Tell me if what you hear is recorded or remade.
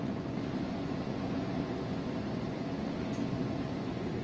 remade